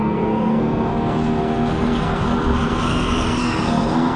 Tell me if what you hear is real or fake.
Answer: fake